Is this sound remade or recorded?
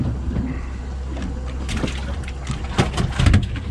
recorded